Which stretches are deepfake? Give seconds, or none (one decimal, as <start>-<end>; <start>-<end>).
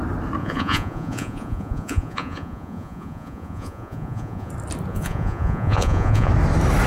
0.4-4.5; 4.9-6.3